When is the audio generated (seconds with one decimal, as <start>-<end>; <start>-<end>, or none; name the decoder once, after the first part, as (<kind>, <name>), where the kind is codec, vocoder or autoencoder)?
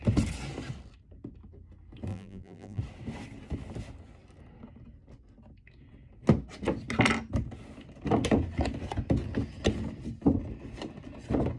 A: 2.1-2.8 (vocoder, BigVGAN v2)